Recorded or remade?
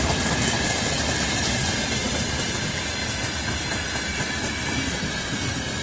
recorded